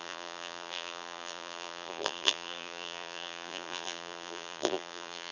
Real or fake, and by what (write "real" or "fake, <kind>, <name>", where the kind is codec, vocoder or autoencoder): fake, vocoder, BigVGAN v2